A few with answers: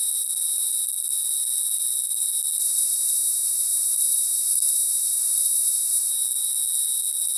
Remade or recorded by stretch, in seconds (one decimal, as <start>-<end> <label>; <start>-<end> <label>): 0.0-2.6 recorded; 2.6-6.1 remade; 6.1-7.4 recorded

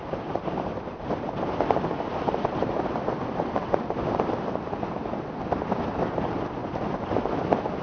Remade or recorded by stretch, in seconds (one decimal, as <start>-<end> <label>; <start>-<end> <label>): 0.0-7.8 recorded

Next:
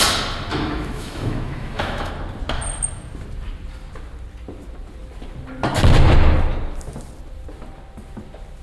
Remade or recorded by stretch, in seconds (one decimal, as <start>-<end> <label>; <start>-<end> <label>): 0.0-0.5 recorded; 0.5-2.1 remade; 2.1-8.6 recorded

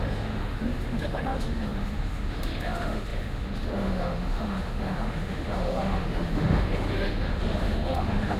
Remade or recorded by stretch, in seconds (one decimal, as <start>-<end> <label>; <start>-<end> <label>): 0.0-8.4 remade

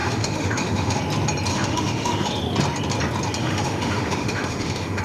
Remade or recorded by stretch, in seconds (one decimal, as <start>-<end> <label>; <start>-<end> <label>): 0.0-1.0 remade; 1.0-1.5 recorded; 1.5-2.3 remade; 2.3-3.4 recorded; 3.4-5.0 remade

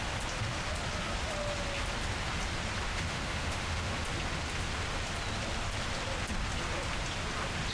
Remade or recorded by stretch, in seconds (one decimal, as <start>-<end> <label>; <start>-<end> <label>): 0.0-2.9 recorded; 2.9-3.9 remade; 3.9-7.7 recorded

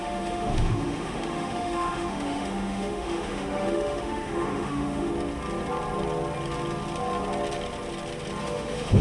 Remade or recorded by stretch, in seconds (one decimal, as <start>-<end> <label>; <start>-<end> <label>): 0.0-5.1 remade; 5.1-8.4 recorded; 8.4-9.0 remade